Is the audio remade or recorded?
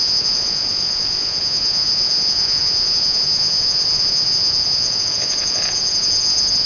remade